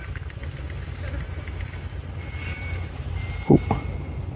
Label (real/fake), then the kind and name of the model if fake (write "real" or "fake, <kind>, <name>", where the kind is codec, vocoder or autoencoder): real